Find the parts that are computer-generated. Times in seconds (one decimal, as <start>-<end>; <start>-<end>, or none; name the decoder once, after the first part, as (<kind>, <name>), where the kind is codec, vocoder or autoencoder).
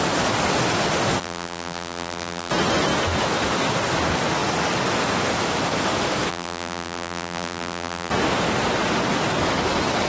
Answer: 1.2-2.5 (vocoder, BigVGAN v2); 6.3-8.1